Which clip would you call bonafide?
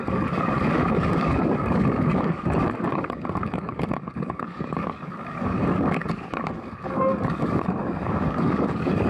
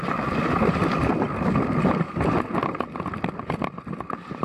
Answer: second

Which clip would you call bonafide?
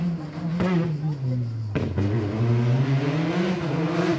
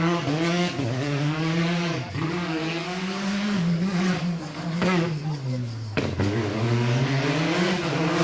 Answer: first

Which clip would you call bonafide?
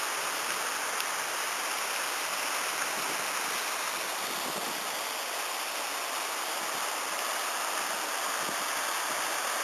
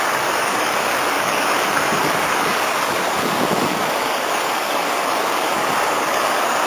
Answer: first